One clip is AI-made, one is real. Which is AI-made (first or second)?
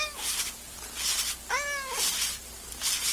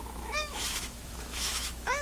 second